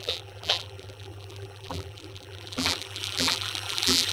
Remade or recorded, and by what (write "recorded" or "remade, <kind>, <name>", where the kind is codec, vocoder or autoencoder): remade, vocoder, BigVGAN v2